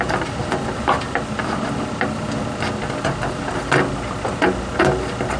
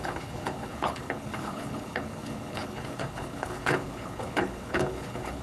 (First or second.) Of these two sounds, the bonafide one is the first